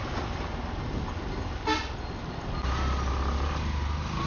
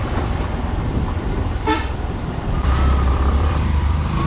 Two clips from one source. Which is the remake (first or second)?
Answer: second